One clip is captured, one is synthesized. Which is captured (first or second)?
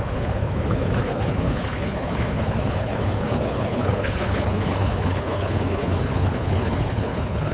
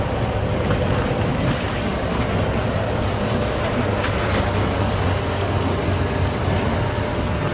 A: second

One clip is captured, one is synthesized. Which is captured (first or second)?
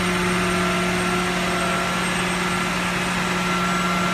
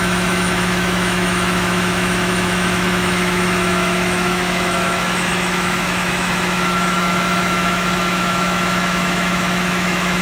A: first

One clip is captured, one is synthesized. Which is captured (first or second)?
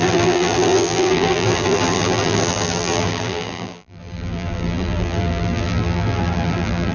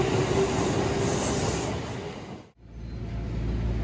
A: second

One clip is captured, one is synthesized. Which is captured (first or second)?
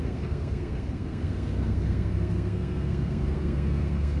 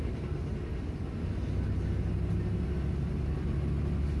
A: second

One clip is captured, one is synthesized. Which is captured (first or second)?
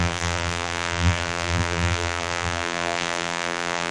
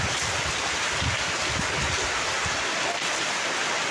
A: second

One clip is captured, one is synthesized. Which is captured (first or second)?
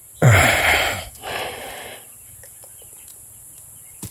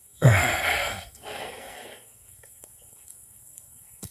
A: first